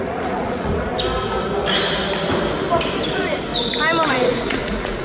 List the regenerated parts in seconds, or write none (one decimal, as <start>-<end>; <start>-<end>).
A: 0.0-0.9; 3.1-3.5; 4.1-5.0